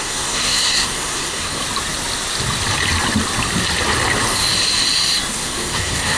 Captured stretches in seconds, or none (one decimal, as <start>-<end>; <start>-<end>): 1.6-5.3